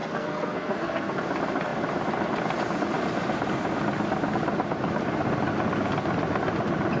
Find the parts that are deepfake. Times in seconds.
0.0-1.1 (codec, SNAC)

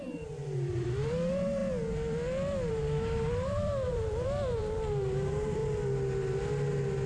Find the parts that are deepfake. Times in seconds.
0.0-1.6 (vocoder, BigVGAN v2); 2.7-5.6

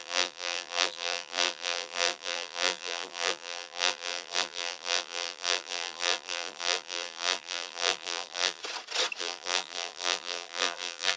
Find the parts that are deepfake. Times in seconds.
0.0-8.6 (vocoder, BigVGAN v2); 9.2-11.2

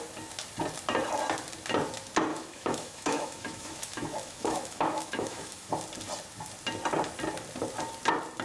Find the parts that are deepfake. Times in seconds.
2.3-5.7 (autoencoder, DAC-VAE)

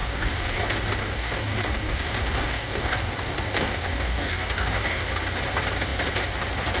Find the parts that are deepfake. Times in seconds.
0.0-0.6 (codec, DAC); 1.0-5.1

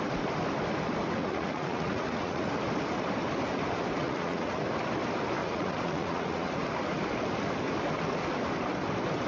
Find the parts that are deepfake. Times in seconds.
1.2-2.5 (vocoder, Vocos); 4.0-4.6; 5.4-6.5

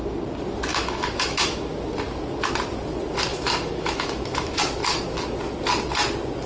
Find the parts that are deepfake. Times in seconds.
0.7-1.7 (autoencoder, DAC-VAE); 3.3-4.6

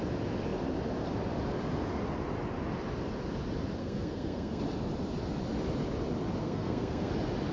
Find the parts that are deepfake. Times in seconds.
3.8-4.6 (codec, SNAC); 6.4-7.1